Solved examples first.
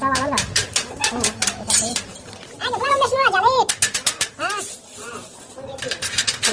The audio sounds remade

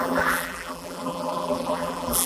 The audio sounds remade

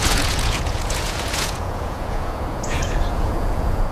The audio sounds remade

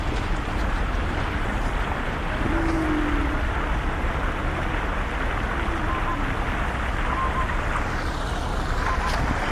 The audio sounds recorded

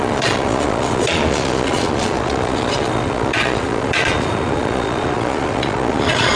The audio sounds remade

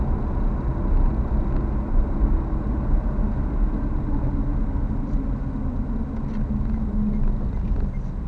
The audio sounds recorded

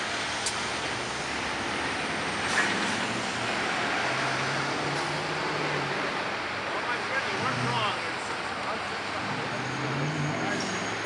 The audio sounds recorded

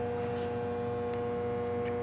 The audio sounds recorded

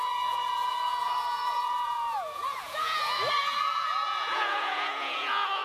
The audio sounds remade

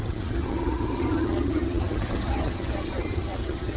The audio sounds remade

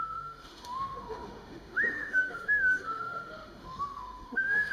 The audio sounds remade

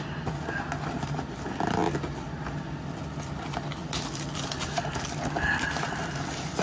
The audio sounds recorded